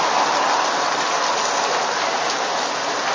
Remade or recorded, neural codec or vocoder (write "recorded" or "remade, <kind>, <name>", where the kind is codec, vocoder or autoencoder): recorded